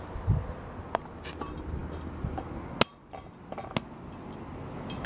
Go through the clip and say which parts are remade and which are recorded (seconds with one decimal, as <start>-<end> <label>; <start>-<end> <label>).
0.0-5.1 recorded